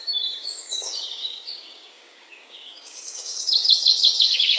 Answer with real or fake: fake